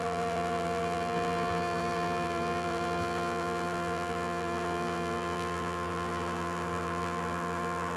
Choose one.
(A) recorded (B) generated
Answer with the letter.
B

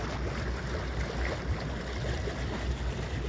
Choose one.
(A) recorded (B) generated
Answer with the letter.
A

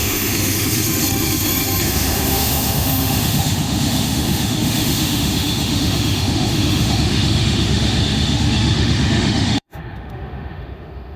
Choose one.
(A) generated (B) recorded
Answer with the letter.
A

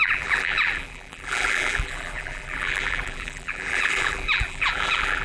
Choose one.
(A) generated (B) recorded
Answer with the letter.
A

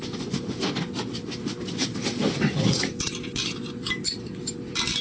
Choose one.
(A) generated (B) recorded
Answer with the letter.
B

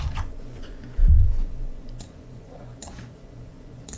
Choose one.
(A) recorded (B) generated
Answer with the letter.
B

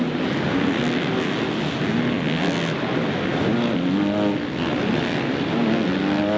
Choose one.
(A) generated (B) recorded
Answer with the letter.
B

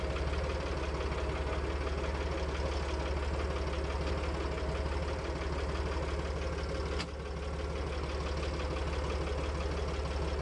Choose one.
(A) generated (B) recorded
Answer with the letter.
B